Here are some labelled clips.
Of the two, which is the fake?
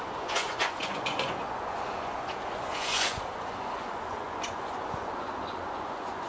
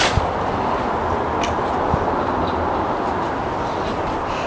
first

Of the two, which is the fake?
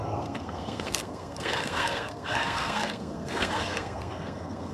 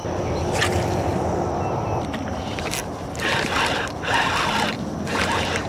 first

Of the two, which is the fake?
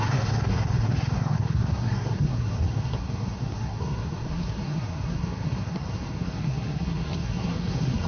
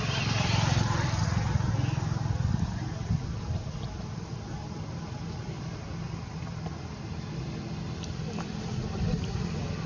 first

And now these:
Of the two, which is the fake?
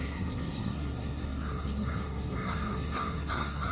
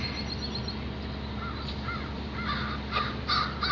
first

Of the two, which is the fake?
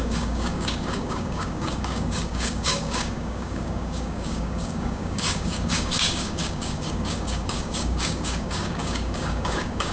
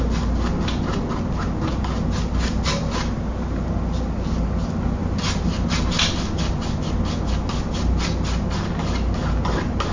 first